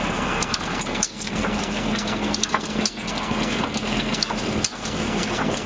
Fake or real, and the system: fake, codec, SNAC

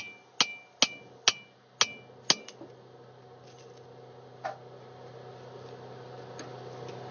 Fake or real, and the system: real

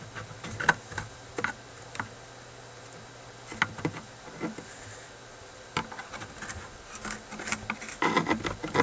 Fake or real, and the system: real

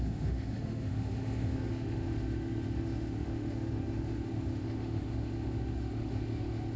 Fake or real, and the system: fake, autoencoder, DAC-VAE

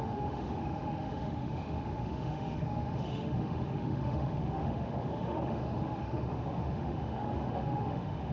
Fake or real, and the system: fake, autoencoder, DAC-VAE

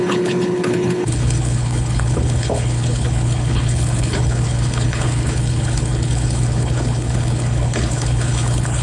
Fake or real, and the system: fake, codec, HILCodec